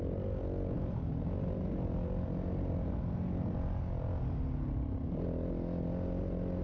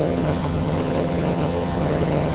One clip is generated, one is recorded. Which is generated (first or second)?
second